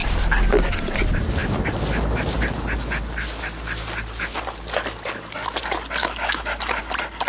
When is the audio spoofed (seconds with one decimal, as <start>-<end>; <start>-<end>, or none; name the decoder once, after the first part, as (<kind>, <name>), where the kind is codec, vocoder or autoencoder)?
6.0-6.8 (autoencoder, DAC-VAE)